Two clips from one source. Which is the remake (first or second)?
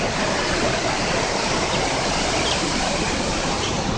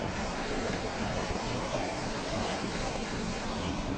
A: second